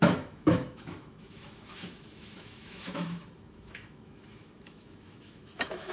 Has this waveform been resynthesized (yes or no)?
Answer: yes